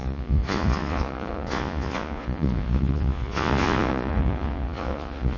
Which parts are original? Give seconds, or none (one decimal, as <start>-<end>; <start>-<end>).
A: none